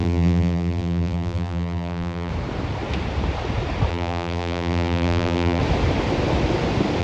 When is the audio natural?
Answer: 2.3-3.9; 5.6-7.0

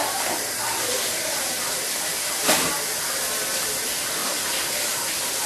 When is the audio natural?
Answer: 0.0-5.5

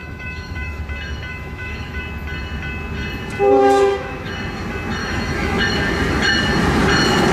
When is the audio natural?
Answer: 0.8-1.3; 2.0-3.6; 4.3-5.0; 5.6-7.3